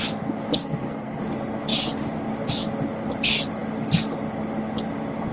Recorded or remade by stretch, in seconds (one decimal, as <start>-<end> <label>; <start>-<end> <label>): 0.0-0.6 recorded; 0.6-1.2 remade; 1.2-5.3 recorded